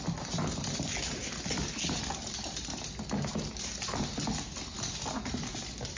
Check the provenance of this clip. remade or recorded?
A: recorded